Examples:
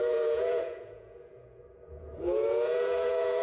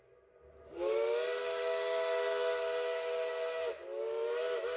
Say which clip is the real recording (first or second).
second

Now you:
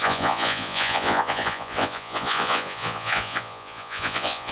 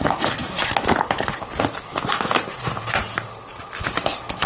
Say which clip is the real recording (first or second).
second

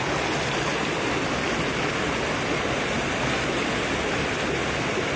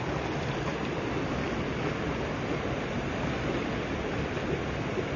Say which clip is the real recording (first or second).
first